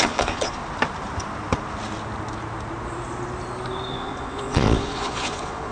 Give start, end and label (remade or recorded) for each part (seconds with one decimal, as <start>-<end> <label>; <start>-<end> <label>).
0.0-0.6 remade; 0.6-3.9 recorded; 3.9-5.7 remade